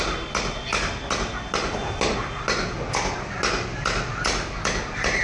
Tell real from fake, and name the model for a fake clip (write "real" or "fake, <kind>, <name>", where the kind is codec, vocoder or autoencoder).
real